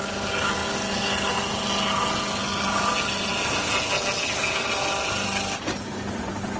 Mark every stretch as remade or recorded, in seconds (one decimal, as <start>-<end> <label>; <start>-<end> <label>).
0.0-6.6 recorded